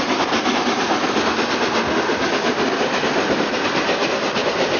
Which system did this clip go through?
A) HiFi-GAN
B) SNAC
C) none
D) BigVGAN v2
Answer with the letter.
C